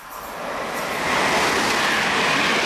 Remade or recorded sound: recorded